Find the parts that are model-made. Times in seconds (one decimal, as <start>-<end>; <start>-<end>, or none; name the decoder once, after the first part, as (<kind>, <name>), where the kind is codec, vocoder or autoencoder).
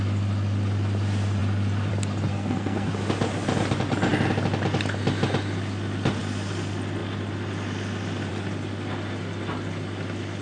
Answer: 2.3-2.9 (codec, SNAC)